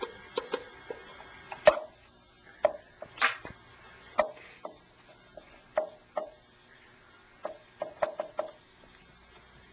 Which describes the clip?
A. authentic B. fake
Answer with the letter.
A